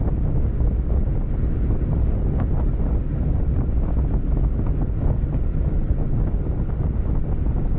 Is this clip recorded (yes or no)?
yes